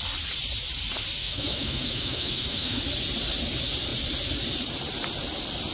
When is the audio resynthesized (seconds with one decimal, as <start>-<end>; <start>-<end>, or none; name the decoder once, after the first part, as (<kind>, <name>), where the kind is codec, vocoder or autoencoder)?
1.2-2.8 (autoencoder, DAC-VAE)